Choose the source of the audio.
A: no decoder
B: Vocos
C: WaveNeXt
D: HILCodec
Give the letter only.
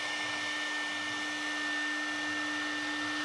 A